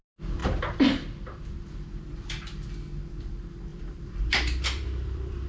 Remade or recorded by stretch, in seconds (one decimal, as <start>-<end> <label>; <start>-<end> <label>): 0.0-0.4 recorded; 0.4-2.0 remade; 2.0-3.7 recorded; 3.7-5.5 remade